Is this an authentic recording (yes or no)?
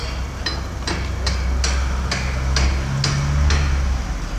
yes